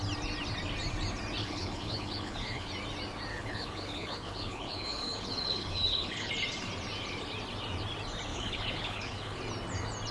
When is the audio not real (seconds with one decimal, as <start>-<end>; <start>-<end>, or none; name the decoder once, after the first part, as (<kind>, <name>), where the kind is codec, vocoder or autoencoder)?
1.4-2.7 (codec, HILCodec); 3.3-6.3; 8.3-9.4